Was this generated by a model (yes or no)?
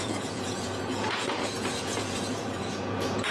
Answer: yes